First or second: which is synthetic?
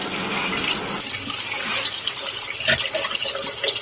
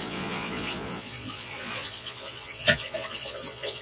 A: second